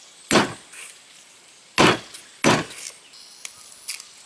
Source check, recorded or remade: recorded